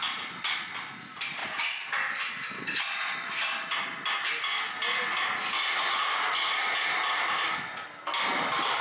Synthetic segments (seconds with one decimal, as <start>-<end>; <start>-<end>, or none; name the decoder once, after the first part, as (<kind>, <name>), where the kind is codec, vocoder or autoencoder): 1.4-1.9 (vocoder, Vocos)